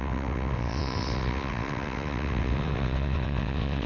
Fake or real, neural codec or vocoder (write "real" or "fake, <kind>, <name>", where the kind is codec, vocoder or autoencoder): fake, vocoder, WaveNeXt